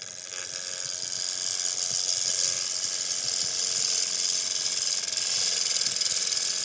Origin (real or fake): real